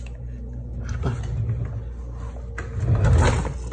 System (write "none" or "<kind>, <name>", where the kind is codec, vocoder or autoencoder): none